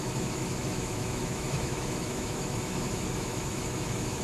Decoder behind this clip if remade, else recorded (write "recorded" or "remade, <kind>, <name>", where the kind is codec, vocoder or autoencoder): remade, autoencoder, DAC-VAE